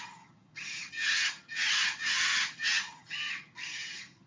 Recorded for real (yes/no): no